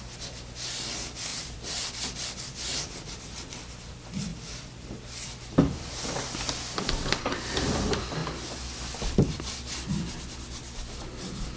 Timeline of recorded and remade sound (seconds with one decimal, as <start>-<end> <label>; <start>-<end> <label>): 0.0-1.3 recorded; 1.3-2.1 remade; 2.1-11.6 recorded